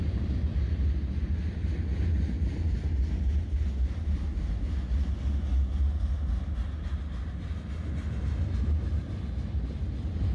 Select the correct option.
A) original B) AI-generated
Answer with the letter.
A